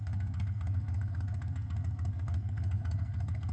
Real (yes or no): no